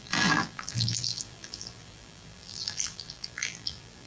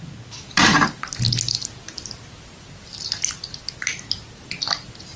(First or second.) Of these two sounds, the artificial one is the first